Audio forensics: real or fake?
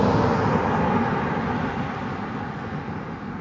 real